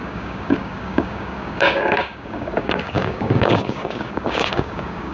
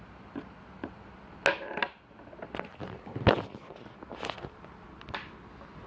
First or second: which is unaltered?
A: second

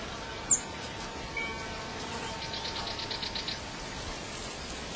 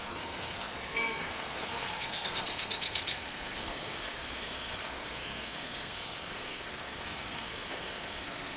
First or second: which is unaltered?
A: first